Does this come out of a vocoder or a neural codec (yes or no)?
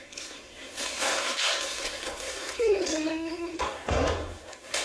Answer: yes